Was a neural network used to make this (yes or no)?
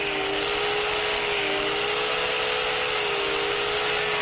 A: no